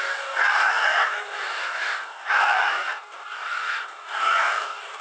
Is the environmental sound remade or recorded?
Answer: remade